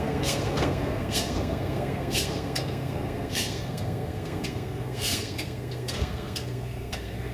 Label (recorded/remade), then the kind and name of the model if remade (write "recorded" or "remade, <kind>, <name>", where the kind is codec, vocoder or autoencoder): remade, codec, SNAC